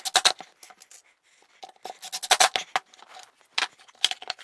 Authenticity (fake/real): real